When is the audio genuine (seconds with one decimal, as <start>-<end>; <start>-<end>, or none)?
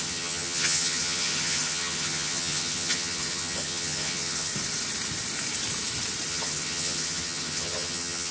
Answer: 4.5-6.3